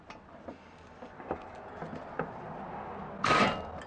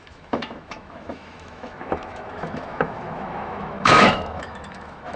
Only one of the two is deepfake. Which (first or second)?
second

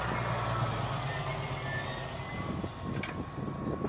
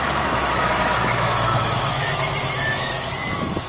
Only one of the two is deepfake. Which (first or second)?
second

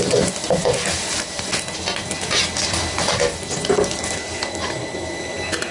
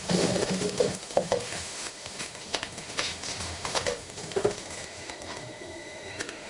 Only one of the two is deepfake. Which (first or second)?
second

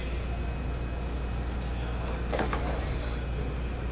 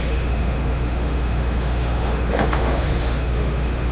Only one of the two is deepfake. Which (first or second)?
second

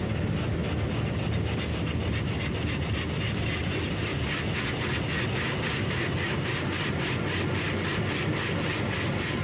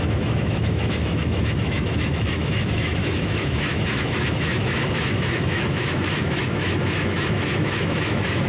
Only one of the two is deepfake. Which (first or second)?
second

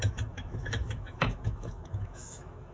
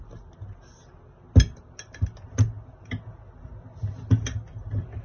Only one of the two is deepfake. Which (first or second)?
first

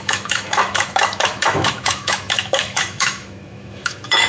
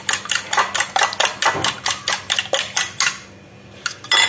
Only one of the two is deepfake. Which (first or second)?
first